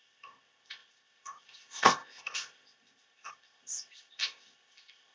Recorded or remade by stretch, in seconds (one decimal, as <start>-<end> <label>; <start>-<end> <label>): 0.0-5.1 remade